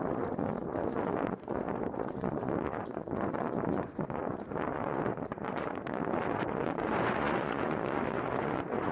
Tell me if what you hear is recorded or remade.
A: remade